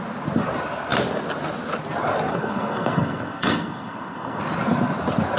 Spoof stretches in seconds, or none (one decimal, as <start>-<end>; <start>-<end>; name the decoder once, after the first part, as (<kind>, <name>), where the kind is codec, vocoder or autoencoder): 2.3-4.4 (codec, SNAC)